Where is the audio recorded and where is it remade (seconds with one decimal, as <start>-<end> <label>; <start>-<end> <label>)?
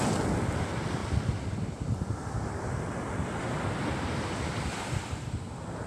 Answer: 0.0-5.9 recorded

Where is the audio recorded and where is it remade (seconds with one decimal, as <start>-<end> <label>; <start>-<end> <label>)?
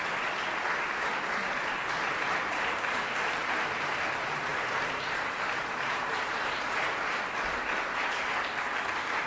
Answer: 0.0-1.4 recorded; 1.4-2.8 remade; 2.8-4.5 recorded; 4.5-8.3 remade; 8.3-9.3 recorded